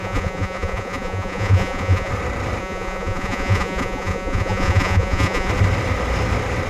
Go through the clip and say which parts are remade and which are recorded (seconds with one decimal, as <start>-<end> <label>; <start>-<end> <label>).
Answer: 0.0-2.1 remade; 2.1-2.6 recorded; 2.6-5.5 remade; 5.5-6.7 recorded